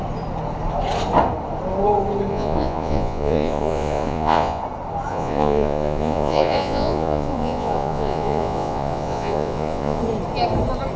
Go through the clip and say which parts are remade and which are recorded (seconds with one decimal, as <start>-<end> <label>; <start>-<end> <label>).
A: 0.0-2.3 recorded; 2.3-4.6 remade; 4.6-5.1 recorded; 5.1-10.0 remade; 10.0-11.0 recorded